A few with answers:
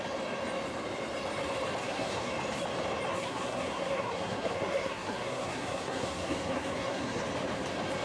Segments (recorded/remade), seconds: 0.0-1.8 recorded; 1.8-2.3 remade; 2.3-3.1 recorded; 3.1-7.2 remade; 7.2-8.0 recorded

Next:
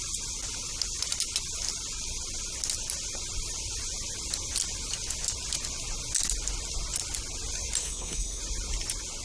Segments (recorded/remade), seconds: 0.0-7.8 recorded; 7.8-8.4 remade; 8.4-9.2 recorded

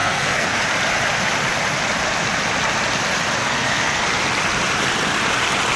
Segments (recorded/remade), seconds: 0.0-0.6 remade; 0.6-3.4 recorded; 3.4-4.0 remade; 4.0-5.8 recorded

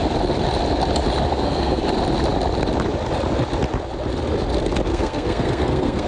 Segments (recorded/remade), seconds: 0.0-1.3 recorded; 1.3-1.8 remade; 1.8-4.9 recorded; 4.9-6.1 remade

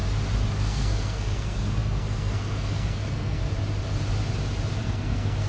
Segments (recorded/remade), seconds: 0.0-0.6 recorded; 0.6-3.4 remade; 3.4-4.8 recorded; 4.8-5.5 remade

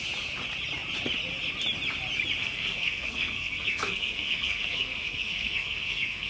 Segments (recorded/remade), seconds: 0.0-2.4 recorded; 2.4-6.3 remade

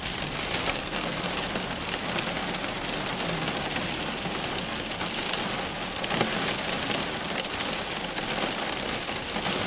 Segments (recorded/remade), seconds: 0.0-0.6 recorded; 0.6-1.2 remade; 1.2-9.7 recorded